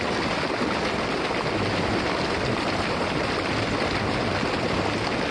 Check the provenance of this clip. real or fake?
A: real